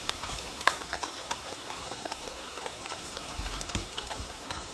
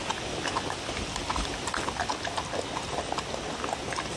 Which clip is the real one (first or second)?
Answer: second